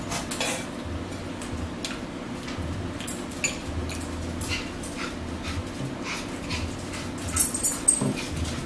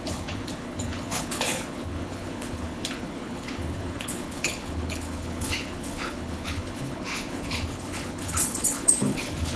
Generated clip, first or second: second